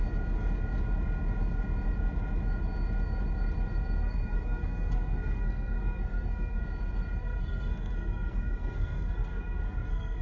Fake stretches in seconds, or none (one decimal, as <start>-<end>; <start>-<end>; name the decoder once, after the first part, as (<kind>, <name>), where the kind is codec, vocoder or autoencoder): 4.0-6.6 (codec, SNAC); 7.2-10.2